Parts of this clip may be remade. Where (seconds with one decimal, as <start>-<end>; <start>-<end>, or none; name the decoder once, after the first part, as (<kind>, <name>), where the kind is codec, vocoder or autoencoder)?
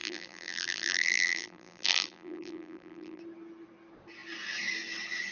0.0-3.2 (vocoder, BigVGAN v2)